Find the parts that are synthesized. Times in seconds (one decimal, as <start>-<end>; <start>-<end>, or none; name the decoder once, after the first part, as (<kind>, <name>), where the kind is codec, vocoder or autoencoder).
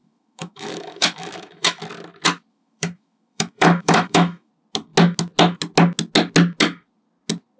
0.0-1.8 (autoencoder, DAC-VAE); 2.5-4.5